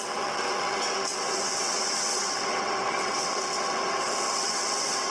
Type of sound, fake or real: fake